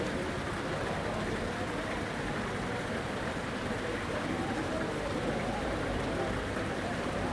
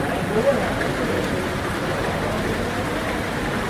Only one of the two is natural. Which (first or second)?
second